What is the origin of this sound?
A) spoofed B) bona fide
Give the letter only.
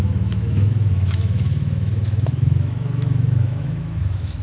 A